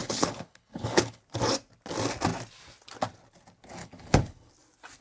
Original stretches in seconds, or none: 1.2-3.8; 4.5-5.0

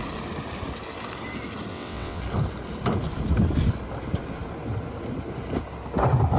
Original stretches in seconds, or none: 0.0-1.7; 2.2-6.4

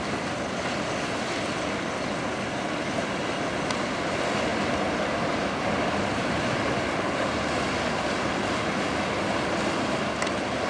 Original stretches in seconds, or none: 0.0-10.7

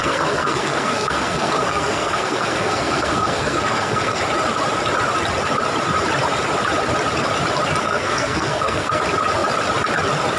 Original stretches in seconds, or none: 4.2-7.8; 9.0-10.4